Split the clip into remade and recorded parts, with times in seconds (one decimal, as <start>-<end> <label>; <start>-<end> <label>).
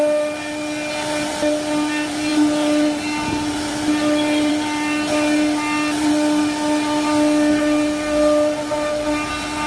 0.0-9.7 recorded